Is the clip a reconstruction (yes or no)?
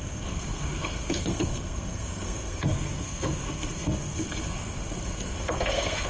yes